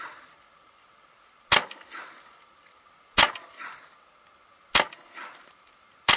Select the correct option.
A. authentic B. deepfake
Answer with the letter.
A